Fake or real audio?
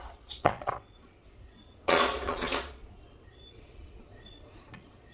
fake